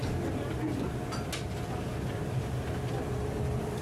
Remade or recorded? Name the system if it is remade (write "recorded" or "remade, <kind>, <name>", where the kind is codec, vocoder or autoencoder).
recorded